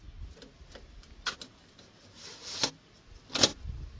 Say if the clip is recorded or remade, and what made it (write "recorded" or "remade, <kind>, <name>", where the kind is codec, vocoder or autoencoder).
recorded